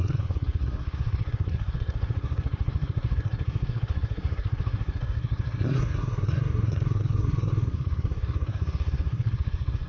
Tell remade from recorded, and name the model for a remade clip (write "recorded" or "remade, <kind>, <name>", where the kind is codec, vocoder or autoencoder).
remade, codec, SNAC